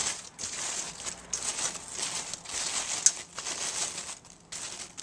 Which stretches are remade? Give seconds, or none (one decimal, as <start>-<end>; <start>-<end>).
0.0-0.6